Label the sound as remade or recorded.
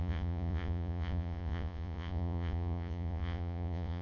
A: remade